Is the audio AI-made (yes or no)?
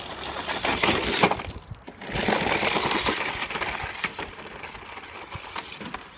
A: no